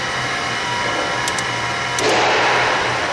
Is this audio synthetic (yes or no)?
no